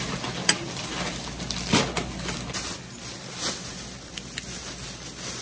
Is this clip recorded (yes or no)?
yes